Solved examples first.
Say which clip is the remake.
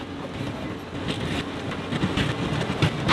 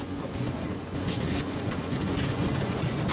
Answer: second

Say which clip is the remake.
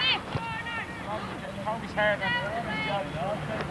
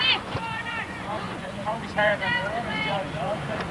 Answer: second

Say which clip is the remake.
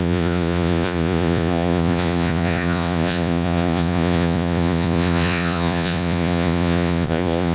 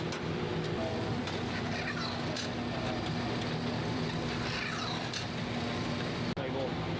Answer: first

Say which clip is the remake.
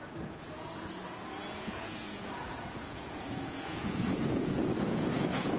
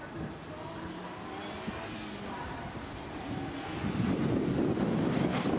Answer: first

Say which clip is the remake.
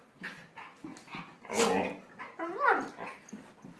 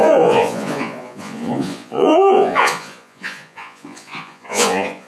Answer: second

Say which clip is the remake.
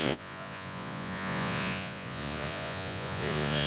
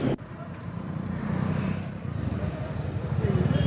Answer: first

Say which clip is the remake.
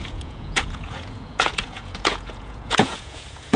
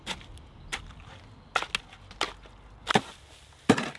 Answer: first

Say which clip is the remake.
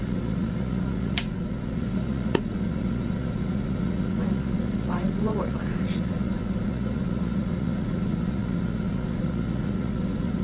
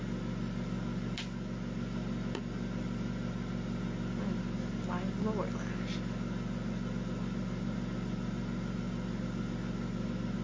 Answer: first